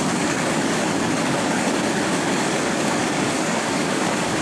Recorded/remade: remade